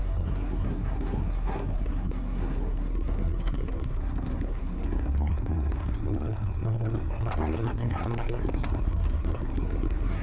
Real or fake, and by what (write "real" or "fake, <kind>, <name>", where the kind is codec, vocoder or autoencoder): fake, codec, SNAC